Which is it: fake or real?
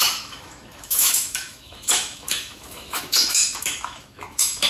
fake